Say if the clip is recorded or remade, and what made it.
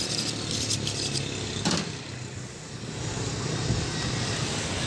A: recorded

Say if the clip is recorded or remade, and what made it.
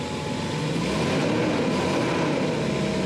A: recorded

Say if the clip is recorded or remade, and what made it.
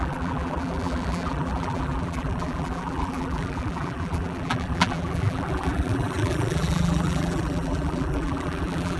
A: remade, vocoder, BigVGAN v2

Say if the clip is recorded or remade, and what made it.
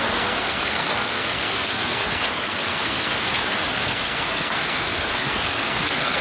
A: remade, codec, SNAC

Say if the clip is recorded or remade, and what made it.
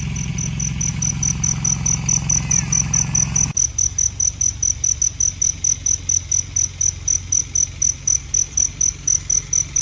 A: recorded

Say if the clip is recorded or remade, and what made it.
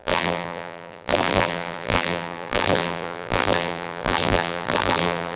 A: remade, vocoder, BigVGAN v2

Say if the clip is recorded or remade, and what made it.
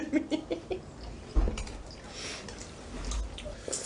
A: recorded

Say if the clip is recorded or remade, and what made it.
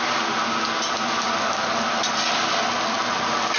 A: recorded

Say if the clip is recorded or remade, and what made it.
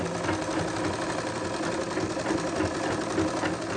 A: recorded